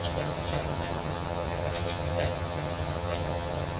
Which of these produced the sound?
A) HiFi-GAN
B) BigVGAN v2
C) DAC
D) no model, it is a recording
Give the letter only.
A